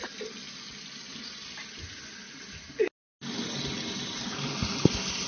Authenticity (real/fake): real